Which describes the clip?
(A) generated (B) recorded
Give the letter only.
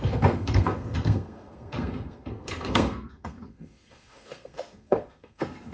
A